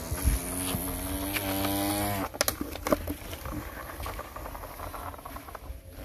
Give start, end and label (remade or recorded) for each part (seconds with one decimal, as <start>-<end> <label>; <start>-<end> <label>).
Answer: 0.0-6.0 recorded